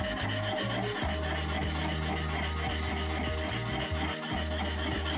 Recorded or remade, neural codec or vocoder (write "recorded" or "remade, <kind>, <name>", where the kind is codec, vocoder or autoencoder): recorded